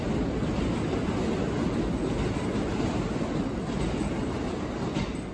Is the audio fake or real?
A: real